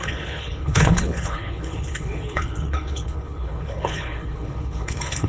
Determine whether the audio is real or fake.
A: fake